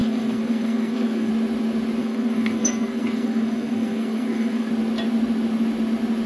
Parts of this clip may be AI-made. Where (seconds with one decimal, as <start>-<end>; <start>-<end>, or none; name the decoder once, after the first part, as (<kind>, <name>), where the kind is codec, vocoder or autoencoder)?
0.0-1.3 (codec, SNAC); 2.0-4.7